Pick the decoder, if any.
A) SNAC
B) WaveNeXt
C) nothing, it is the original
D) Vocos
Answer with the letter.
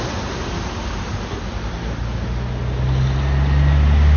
C